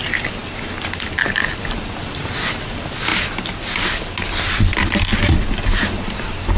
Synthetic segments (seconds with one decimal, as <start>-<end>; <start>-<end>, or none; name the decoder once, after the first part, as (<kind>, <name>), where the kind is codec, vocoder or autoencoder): none